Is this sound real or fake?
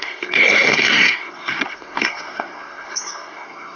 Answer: fake